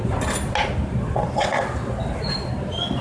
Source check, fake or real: real